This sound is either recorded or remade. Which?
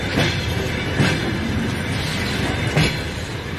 recorded